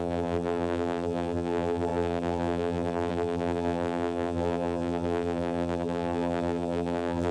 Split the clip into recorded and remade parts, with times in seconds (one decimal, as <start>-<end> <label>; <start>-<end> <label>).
0.0-7.3 remade